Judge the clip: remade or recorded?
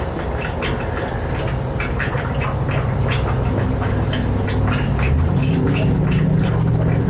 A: recorded